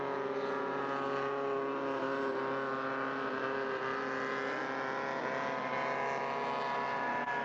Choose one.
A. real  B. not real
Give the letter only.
A